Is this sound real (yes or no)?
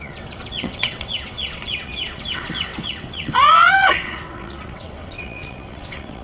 no